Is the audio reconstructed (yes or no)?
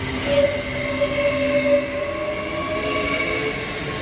no